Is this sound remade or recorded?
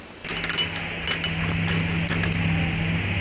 recorded